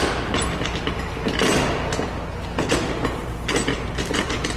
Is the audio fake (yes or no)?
no